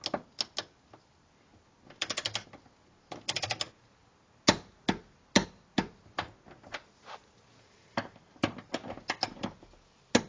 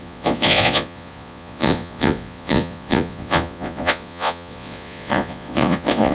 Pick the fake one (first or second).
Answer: second